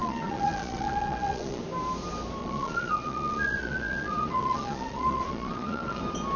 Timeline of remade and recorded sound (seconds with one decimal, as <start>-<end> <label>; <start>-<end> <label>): 0.0-1.6 remade; 1.6-2.4 recorded; 2.4-6.0 remade; 6.0-6.4 recorded